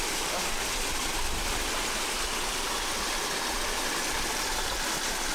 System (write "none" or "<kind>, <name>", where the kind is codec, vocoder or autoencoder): none